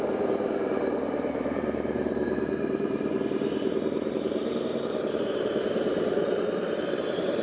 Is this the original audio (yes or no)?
no